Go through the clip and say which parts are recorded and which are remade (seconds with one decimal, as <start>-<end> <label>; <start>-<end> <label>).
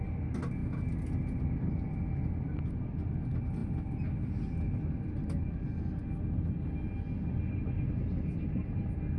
0.0-9.2 recorded